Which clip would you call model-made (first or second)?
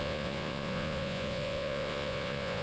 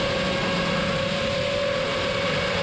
first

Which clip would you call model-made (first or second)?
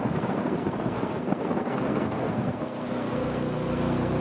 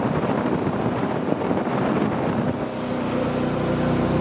first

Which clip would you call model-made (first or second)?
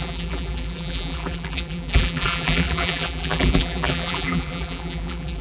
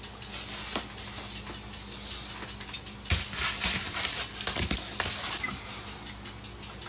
first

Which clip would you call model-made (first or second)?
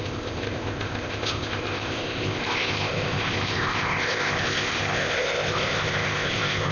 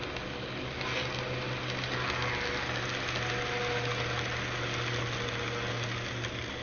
first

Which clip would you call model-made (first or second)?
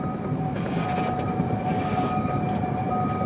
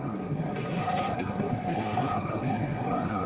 second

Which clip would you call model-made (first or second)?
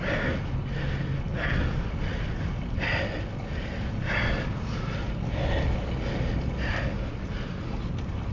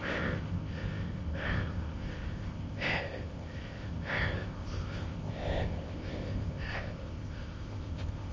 second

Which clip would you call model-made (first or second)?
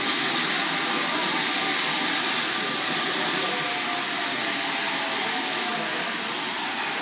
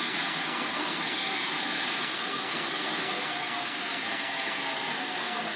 second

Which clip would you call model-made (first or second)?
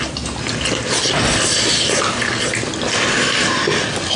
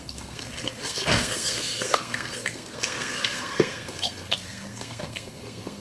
second